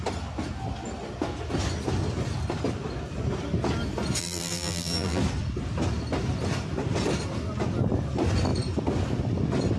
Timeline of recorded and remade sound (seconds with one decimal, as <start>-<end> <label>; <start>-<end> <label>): 0.0-4.2 recorded; 4.2-5.2 remade; 5.2-9.8 recorded